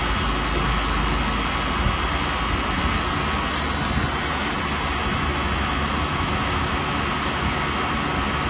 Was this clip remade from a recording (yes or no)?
no